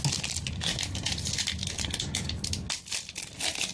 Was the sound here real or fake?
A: real